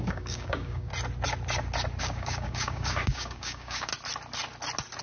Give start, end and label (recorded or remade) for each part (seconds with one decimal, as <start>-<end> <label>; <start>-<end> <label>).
0.0-0.9 remade; 0.9-2.0 recorded; 2.0-3.9 remade; 3.9-5.0 recorded